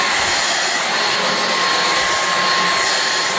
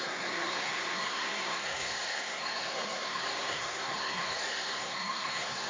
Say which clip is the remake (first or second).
second